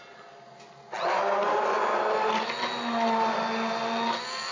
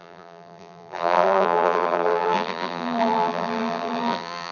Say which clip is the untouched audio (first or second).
first